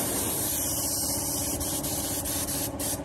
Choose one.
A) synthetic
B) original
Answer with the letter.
A